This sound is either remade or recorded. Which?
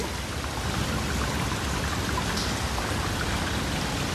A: recorded